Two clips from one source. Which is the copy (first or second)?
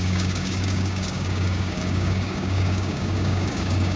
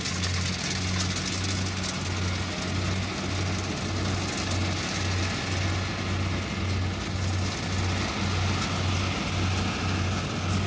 first